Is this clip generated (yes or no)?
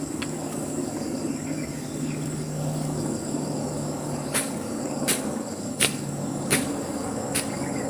yes